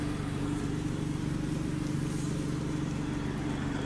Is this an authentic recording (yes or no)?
no